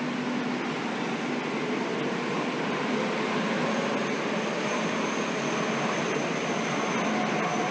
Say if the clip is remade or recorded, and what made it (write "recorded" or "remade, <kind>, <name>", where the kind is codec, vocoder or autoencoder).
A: recorded